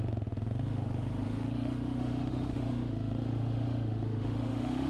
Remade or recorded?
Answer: remade